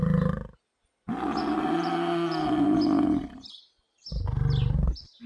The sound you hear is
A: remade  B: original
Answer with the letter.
B